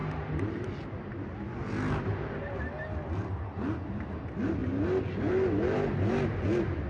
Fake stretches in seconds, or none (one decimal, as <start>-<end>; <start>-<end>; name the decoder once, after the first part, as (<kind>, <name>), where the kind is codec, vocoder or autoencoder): none